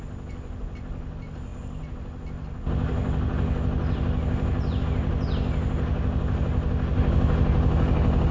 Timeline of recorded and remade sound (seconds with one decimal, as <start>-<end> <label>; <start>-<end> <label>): 0.0-8.3 recorded